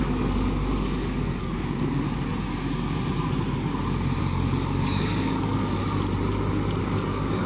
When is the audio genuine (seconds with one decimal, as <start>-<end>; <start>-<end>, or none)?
2.3-4.2; 5.8-6.8

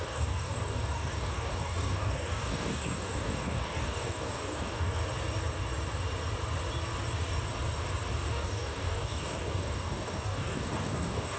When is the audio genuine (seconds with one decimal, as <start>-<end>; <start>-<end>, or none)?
5.0-8.3

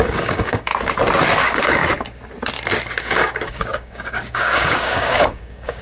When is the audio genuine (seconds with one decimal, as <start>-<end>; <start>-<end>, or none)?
0.7-1.4; 1.8-3.0